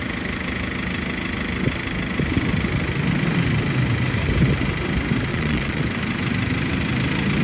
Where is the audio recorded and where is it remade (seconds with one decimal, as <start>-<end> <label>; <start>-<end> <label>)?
0.0-5.3 recorded; 5.3-5.8 remade; 5.8-7.4 recorded